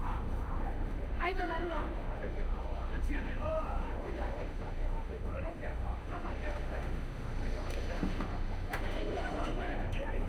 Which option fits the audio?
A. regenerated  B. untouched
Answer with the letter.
A